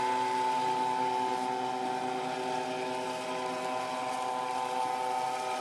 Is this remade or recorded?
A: recorded